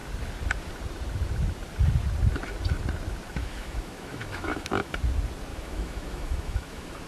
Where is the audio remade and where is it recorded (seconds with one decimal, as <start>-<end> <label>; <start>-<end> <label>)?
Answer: 0.0-3.4 recorded; 3.4-4.9 remade; 4.9-5.5 recorded; 5.5-7.1 remade